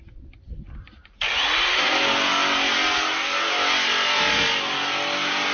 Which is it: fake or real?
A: real